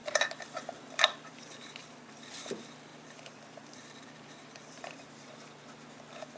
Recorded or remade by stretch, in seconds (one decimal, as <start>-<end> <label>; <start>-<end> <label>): 0.0-2.5 remade; 2.5-2.9 recorded; 2.9-5.6 remade; 5.6-6.4 recorded